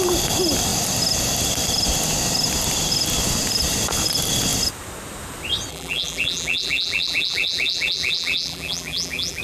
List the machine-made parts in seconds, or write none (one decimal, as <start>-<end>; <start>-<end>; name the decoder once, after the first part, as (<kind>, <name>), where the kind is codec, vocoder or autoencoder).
5.7-9.4 (vocoder, BigVGAN v2)